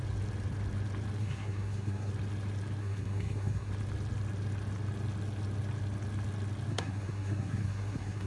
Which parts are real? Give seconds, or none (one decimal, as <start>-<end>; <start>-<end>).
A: 0.0-1.2; 2.1-2.8; 3.7-6.7